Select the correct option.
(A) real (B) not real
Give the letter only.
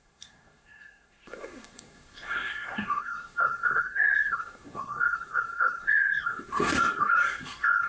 B